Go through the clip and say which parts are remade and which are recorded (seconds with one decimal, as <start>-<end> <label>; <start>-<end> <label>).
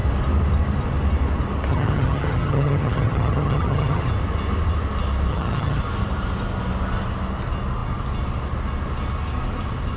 0.0-1.7 recorded; 1.7-4.1 remade; 4.1-5.3 recorded; 5.3-5.8 remade; 5.8-10.0 recorded